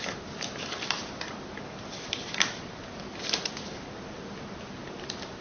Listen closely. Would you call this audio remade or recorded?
recorded